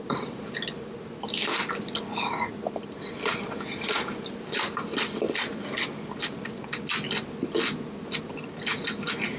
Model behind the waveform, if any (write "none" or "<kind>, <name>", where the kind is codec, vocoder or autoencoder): none